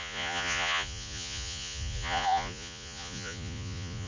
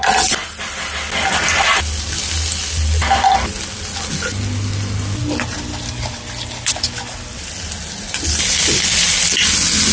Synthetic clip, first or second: first